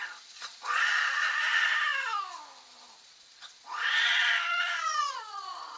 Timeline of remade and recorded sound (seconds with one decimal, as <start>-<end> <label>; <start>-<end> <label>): 0.0-1.7 remade; 1.7-3.0 recorded; 3.0-5.8 remade